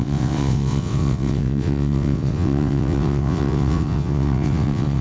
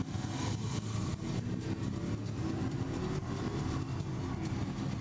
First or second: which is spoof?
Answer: first